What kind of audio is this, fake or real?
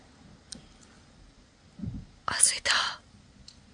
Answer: real